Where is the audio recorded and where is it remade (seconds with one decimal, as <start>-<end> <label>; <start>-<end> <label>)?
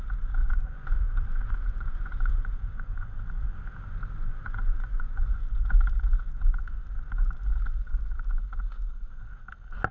0.0-0.4 recorded; 0.4-3.1 remade; 3.1-4.3 recorded; 4.3-5.4 remade; 5.4-9.9 recorded